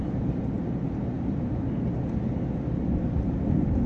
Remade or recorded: recorded